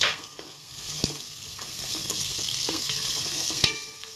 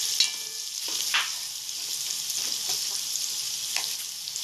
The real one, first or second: second